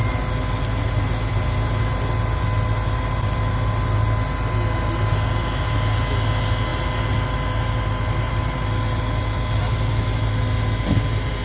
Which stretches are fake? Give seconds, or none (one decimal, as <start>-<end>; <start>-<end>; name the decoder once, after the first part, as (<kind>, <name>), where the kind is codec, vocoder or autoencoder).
none